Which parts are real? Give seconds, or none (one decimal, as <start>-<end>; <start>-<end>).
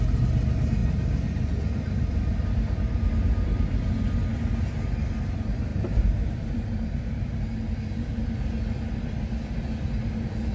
0.0-5.7; 7.4-10.5